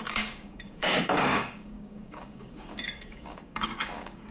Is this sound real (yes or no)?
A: no